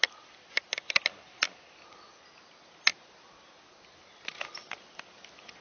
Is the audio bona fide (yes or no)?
yes